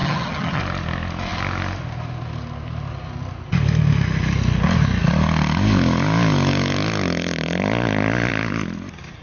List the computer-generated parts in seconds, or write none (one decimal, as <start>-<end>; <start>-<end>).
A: 0.0-0.6